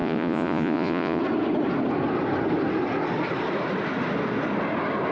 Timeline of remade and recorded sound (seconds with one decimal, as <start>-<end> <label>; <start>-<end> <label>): 0.0-1.2 remade; 1.2-5.1 recorded